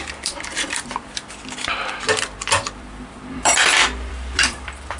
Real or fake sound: fake